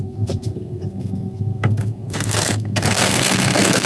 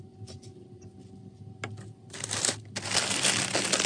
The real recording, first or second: second